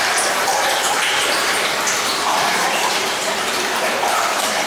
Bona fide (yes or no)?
no